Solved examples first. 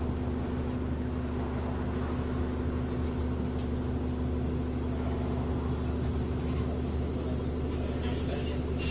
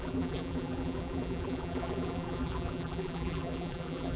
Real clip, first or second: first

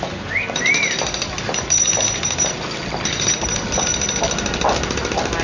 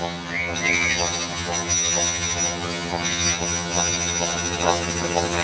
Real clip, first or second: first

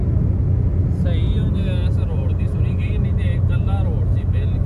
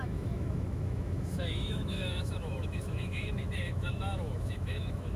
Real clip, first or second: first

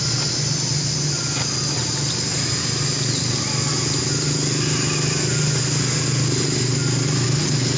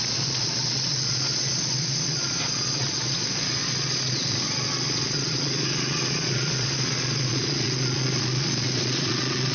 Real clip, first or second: first